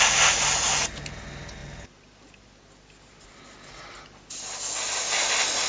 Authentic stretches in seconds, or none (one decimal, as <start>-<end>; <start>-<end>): 0.0-5.7